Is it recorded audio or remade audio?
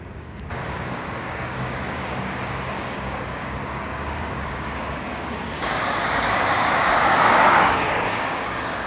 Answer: remade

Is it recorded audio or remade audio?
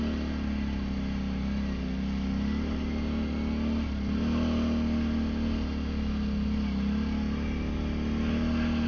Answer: recorded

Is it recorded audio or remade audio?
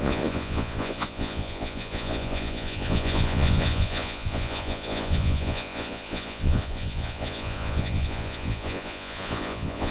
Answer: remade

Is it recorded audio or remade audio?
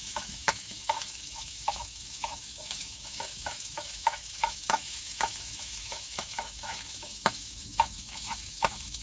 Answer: remade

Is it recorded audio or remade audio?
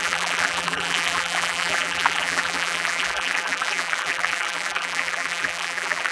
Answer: remade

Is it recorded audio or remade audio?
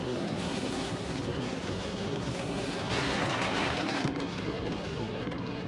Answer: remade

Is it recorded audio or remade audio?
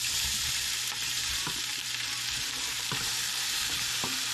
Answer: remade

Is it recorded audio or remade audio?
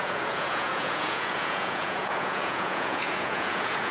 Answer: remade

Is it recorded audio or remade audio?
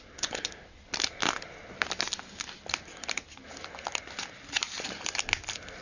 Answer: recorded